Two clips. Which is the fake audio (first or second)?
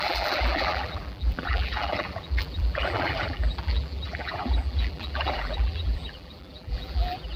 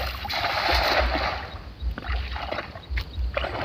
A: first